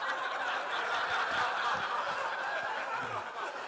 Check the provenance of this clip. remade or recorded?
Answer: recorded